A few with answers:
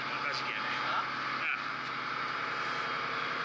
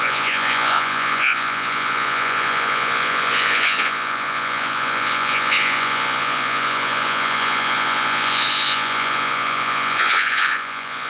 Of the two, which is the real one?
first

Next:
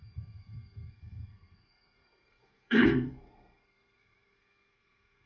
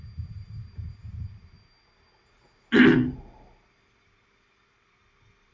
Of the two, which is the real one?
second